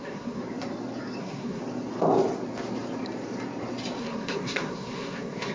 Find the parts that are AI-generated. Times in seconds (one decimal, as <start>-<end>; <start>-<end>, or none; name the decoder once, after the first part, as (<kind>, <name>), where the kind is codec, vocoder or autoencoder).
0.0-0.4 (codec, SNAC); 1.2-1.6; 4.0-5.5